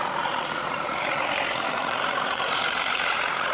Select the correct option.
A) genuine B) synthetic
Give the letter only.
B